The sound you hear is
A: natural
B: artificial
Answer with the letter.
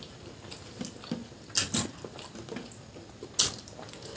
A